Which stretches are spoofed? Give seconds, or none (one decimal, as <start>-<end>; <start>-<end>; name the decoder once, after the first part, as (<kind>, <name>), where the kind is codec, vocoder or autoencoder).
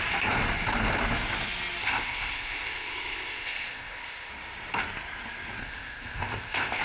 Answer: 1.8-4.3 (codec, ZipCodec); 5.6-6.8